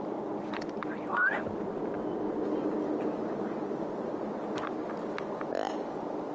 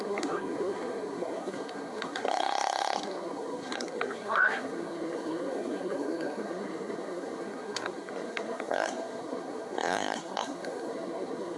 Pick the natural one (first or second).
first